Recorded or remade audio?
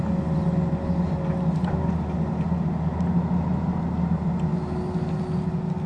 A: recorded